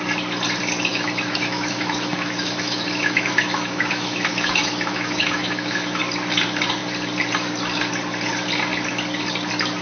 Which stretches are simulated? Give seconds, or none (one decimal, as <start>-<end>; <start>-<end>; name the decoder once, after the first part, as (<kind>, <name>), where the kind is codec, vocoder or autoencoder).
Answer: 0.9-6.0 (autoencoder, DAC-VAE)